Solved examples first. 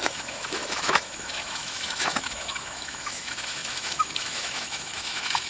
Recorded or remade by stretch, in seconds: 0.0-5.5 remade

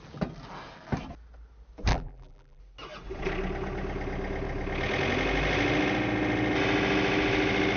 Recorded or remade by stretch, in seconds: 0.0-1.9 recorded; 1.9-2.6 remade; 2.6-7.8 recorded